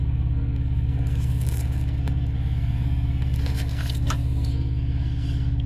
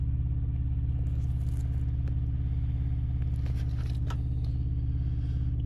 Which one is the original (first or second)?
second